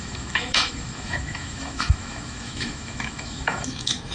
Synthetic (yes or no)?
yes